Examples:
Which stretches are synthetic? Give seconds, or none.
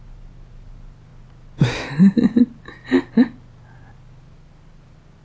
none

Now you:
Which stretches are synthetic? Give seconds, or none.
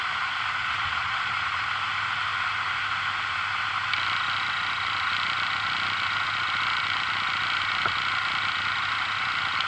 0.6-1.7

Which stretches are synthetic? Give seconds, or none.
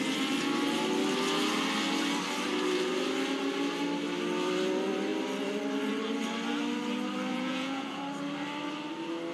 7.3-8.0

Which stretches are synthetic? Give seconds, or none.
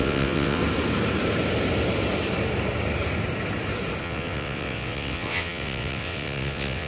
0.0-0.6; 4.0-6.9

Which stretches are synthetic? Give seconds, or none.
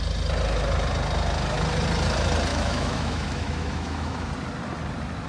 2.5-4.3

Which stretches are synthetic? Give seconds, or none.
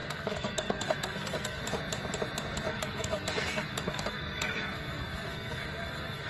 0.0-1.6; 2.7-6.3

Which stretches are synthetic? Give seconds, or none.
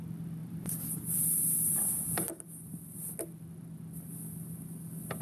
0.4-1.7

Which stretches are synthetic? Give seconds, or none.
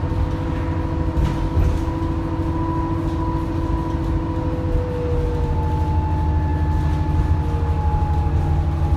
none